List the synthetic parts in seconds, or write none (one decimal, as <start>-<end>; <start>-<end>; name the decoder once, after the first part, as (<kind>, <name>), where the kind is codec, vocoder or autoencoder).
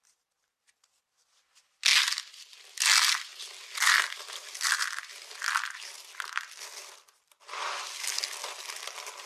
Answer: 1.9-2.5 (vocoder, BigVGAN v2)